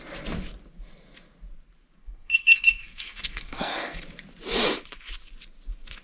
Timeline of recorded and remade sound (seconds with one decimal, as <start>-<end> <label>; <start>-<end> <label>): 0.0-2.0 recorded; 2.0-4.0 remade; 4.0-6.0 recorded